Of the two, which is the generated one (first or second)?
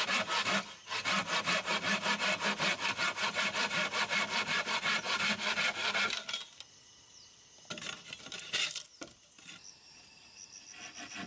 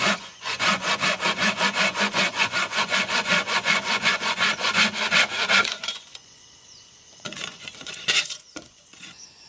second